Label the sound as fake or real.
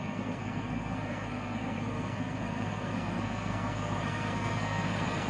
fake